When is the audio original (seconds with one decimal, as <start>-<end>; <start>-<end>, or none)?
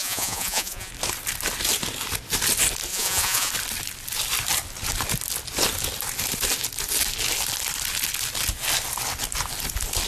0.9-2.9; 3.5-10.1